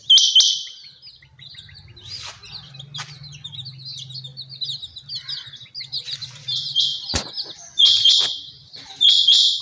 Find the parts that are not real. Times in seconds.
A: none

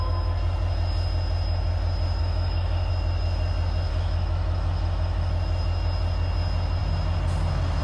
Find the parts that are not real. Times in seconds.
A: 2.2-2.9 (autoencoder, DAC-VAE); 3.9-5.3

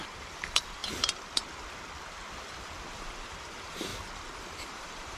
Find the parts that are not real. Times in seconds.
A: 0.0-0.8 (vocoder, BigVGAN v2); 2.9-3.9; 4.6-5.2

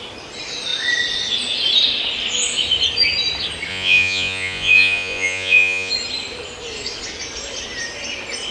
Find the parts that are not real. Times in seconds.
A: 3.7-5.9 (vocoder, Vocos)

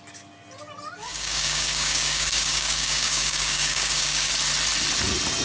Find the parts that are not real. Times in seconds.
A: 1.1-4.3 (codec, DAC)

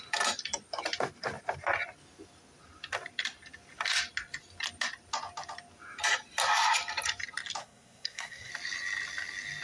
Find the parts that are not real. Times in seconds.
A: 7.6-8.5 (codec, SNAC)